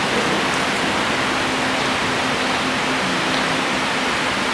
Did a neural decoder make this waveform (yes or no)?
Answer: no